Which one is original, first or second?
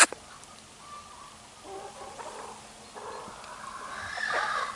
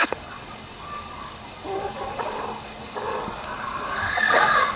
first